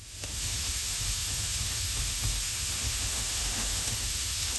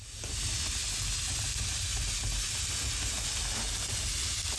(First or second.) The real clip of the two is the second